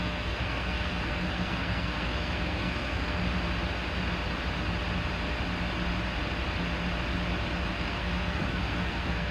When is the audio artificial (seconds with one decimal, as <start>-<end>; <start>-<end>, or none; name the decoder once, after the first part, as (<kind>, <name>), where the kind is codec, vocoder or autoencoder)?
0.0-3.2 (codec, SNAC); 7.7-9.3